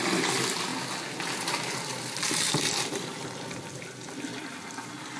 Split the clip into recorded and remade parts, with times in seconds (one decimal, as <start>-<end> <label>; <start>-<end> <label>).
0.0-5.2 recorded